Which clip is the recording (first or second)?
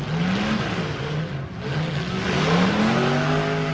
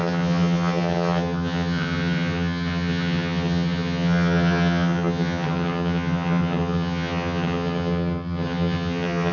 first